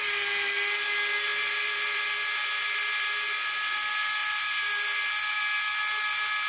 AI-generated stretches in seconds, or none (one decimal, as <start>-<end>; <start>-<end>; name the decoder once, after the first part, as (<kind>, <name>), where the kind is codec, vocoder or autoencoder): 1.3-2.0 (vocoder, BigVGAN v2); 4.2-5.0